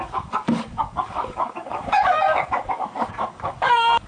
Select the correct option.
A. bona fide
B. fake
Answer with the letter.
B